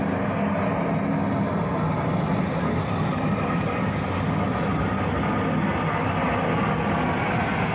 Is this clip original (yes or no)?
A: yes